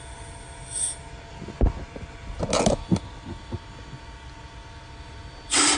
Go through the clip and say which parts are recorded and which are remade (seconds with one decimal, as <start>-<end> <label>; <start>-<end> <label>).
0.0-1.3 recorded; 1.3-2.4 remade; 2.4-5.8 recorded